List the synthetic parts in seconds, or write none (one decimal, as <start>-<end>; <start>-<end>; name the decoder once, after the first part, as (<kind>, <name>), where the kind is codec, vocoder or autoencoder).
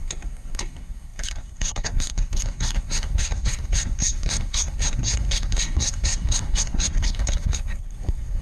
0.0-8.4 (codec, SNAC)